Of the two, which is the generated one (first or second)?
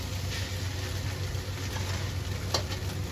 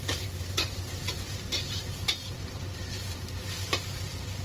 second